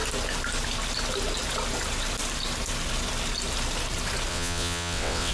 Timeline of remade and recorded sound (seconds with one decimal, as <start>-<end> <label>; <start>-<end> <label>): 0.0-4.3 recorded; 4.3-5.3 remade